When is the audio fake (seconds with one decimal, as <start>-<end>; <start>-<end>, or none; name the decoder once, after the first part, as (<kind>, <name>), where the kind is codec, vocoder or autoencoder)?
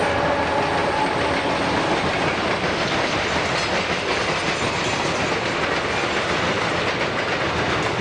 none